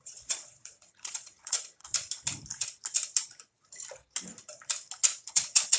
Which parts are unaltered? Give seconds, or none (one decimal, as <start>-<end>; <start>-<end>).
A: 1.8-5.3